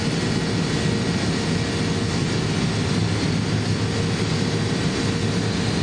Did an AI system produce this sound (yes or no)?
no